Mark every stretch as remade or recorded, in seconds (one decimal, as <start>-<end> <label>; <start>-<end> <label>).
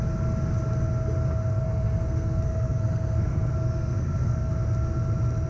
0.0-1.5 recorded; 1.5-4.5 remade; 4.5-5.5 recorded